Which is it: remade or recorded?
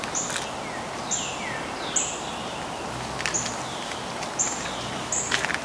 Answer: recorded